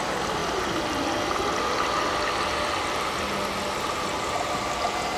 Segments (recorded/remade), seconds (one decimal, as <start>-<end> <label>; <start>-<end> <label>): 0.0-5.2 recorded